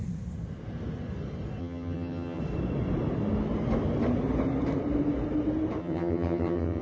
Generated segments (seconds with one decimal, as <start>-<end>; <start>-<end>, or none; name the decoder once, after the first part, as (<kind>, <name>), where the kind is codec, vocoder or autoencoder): 1.6-2.4 (vocoder, HiFi-GAN); 5.8-6.8